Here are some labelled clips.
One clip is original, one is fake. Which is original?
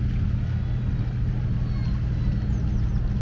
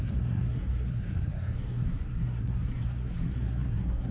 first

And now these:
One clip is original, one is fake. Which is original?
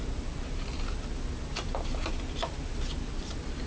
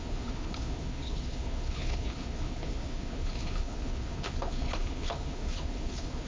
first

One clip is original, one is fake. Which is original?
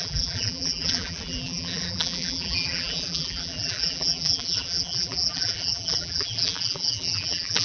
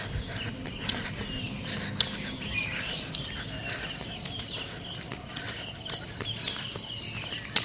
second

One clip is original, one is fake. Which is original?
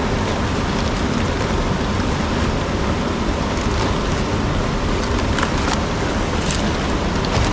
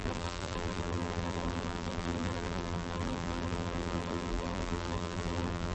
first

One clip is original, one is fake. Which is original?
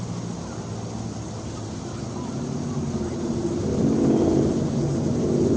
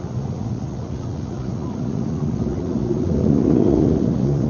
first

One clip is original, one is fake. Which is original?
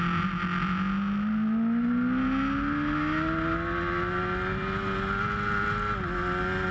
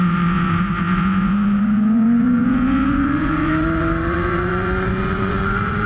first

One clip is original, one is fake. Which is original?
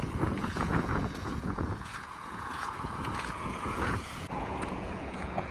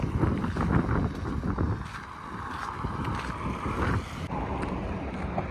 second